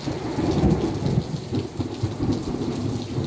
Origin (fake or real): real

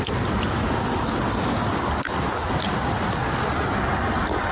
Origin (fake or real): real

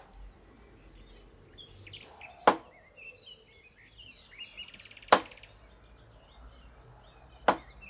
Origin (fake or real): real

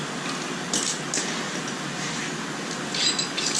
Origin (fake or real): real